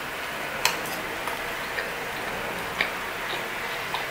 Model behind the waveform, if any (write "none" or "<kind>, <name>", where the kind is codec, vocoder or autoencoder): none